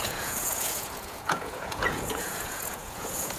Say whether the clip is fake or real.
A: fake